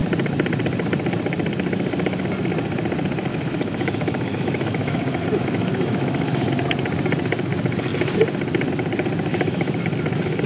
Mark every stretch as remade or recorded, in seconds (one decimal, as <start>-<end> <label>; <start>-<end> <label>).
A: 0.0-3.3 recorded; 3.3-6.5 remade; 6.5-9.3 recorded; 9.3-9.8 remade; 9.8-10.5 recorded